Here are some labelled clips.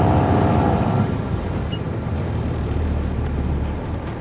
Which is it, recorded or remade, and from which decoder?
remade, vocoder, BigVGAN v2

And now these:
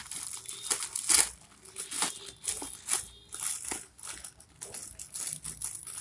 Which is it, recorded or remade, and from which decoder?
recorded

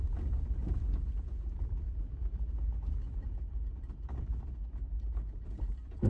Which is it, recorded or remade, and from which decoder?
recorded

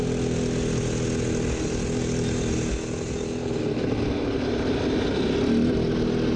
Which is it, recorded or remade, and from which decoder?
recorded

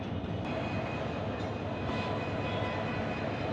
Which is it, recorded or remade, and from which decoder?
recorded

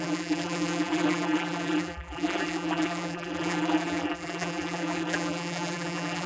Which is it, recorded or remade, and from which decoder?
remade, vocoder, BigVGAN v2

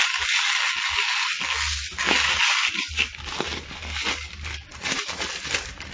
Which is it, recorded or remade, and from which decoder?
recorded